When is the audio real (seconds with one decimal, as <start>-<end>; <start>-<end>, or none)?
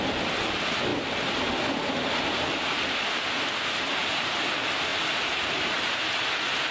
0.0-4.0; 4.5-4.9; 6.0-6.7